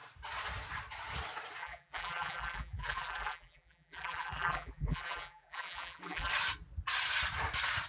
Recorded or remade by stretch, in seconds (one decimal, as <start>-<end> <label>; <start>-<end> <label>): 0.0-1.6 recorded; 1.6-6.3 remade; 6.3-7.9 recorded